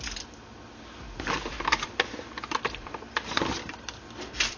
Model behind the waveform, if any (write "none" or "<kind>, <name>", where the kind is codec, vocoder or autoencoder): none